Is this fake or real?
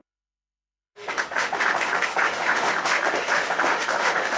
fake